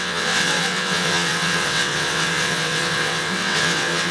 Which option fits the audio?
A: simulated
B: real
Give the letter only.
A